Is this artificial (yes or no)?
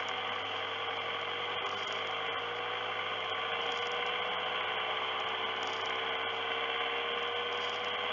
no